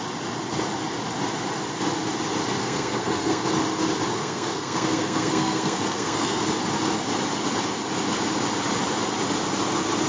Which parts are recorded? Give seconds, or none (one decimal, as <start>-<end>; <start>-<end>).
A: 0.0-2.6; 3.4-4.1; 6.4-10.1